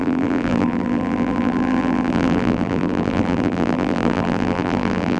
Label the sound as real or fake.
fake